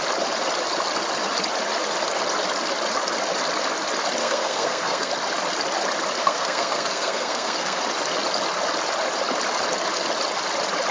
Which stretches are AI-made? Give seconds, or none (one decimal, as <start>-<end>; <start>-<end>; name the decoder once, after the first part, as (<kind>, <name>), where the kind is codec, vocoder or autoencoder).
4.2-5.1 (codec, SNAC); 6.2-7.8